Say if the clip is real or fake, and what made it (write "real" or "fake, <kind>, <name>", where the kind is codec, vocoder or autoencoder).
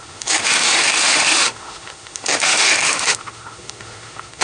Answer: fake, autoencoder, DAC-VAE